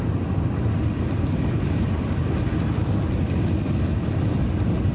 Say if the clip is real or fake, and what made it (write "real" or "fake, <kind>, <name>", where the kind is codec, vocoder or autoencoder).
real